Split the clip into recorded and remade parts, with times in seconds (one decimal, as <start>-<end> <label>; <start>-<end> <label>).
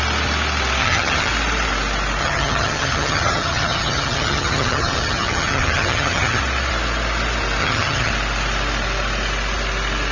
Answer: 0.0-0.8 recorded; 0.8-1.3 remade; 1.3-2.2 recorded; 2.2-6.4 remade; 6.4-7.6 recorded; 7.6-8.1 remade; 8.1-10.1 recorded